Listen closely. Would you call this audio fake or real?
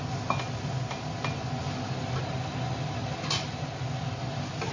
real